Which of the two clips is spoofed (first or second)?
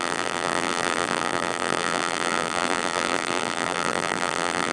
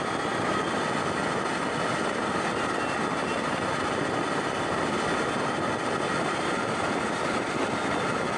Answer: first